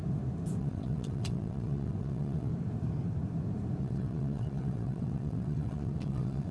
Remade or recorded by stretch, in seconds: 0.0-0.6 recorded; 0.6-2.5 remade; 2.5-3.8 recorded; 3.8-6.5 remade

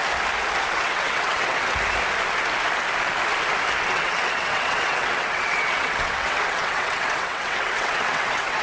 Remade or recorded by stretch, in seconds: 0.0-0.7 recorded; 0.7-1.7 remade; 1.7-3.8 recorded; 3.8-8.6 remade

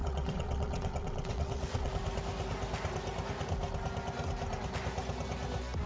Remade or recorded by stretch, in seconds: 0.0-1.9 remade; 1.9-5.9 recorded

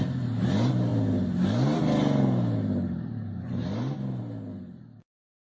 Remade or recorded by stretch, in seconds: 0.0-5.5 recorded